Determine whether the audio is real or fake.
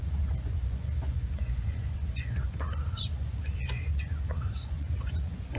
fake